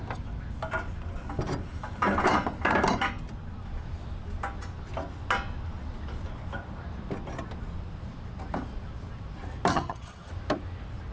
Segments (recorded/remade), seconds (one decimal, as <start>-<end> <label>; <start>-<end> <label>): 0.0-9.7 recorded; 9.7-10.3 remade; 10.3-11.1 recorded